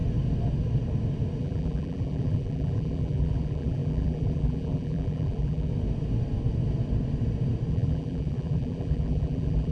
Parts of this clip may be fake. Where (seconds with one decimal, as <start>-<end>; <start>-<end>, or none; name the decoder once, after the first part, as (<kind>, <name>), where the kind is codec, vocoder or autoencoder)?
1.4-5.7 (vocoder, BigVGAN v2); 7.7-9.7

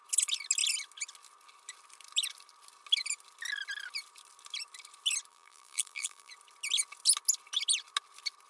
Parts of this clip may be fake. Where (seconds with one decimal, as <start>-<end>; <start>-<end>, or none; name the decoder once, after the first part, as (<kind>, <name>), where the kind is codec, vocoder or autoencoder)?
5.3-6.3 (vocoder, BigVGAN v2)